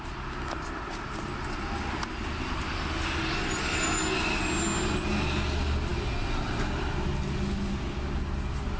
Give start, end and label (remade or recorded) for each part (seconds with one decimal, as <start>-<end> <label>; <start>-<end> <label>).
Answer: 0.0-8.8 recorded